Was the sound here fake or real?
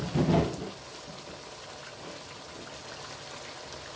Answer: real